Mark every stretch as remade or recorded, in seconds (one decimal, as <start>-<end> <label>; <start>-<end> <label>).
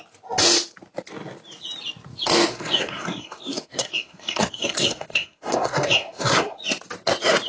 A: 0.0-2.5 recorded; 2.5-6.6 remade; 6.6-7.5 recorded